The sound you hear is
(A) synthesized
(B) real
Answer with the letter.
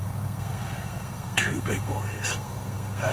A